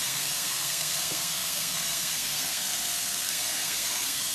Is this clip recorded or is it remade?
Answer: remade